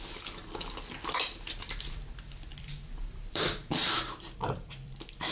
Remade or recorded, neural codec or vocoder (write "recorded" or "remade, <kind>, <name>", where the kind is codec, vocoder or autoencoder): remade, vocoder, BigVGAN v2